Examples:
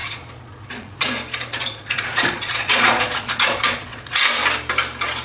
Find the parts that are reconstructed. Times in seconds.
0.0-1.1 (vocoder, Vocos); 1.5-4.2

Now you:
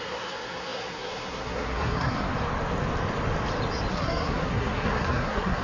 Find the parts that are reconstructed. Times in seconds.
0.0-2.3 (codec, SNAC); 3.9-5.6

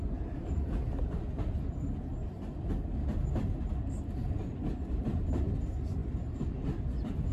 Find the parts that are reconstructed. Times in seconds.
none

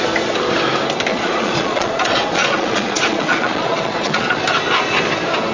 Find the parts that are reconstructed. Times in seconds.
1.1-4.4 (vocoder, Vocos)

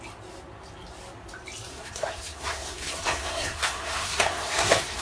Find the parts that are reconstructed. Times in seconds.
1.7-5.0 (codec, SNAC)

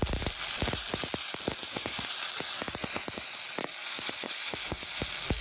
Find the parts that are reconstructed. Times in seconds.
1.6-2.2 (vocoder, Vocos); 2.8-3.4; 3.8-5.0

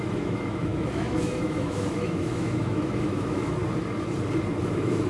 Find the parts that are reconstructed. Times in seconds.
0.0-3.6 (autoencoder, DAC-VAE); 4.6-5.1

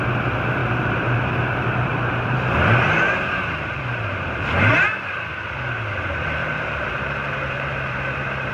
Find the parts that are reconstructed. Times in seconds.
0.6-5.3 (vocoder, BigVGAN v2); 6.4-8.5